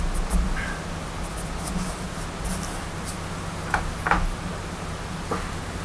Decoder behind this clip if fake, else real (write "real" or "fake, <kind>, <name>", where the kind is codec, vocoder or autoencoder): real